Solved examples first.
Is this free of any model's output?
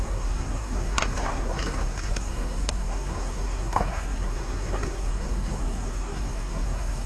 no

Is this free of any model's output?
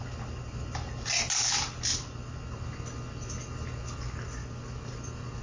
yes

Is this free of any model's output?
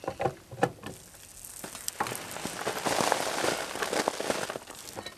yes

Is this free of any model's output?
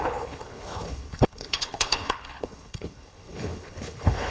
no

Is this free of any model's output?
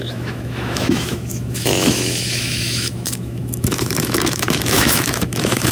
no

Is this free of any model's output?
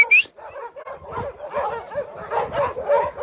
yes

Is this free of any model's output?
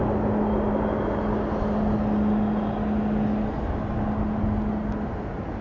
yes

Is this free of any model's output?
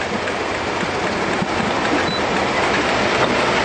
yes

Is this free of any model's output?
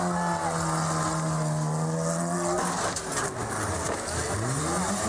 yes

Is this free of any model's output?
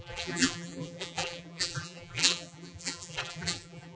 no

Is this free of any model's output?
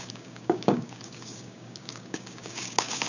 no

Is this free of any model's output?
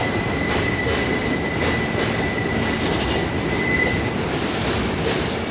yes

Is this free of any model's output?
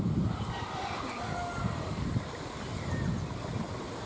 yes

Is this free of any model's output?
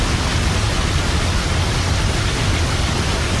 yes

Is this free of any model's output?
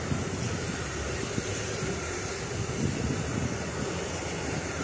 yes